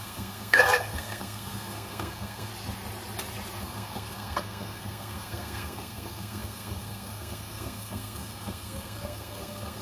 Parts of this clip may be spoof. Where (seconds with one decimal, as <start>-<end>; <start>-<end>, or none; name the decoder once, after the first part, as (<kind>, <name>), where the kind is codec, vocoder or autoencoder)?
0.0-2.5 (codec, SNAC); 3.6-9.8